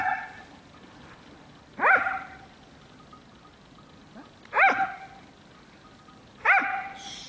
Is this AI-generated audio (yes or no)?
no